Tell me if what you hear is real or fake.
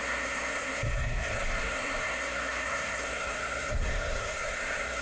fake